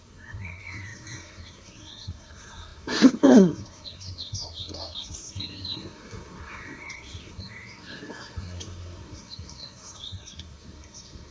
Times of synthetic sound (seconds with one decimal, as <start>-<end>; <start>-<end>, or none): 0.0-11.3